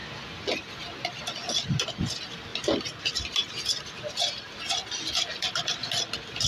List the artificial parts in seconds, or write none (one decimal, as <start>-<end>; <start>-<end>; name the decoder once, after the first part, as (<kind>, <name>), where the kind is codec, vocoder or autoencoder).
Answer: none